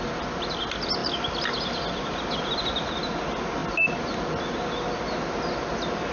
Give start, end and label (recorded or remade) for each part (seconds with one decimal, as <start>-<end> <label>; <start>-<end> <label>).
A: 0.0-6.1 recorded